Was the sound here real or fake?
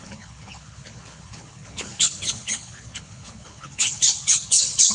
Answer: fake